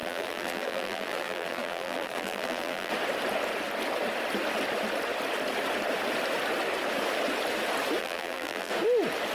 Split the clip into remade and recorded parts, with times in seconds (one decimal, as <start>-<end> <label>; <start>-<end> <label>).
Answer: 0.0-2.9 remade; 2.9-8.0 recorded; 8.0-8.7 remade; 8.7-9.3 recorded